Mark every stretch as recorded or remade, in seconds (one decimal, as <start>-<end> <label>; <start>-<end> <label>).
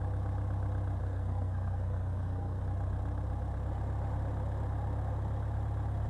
0.0-1.0 recorded; 1.0-2.6 remade; 2.6-6.1 recorded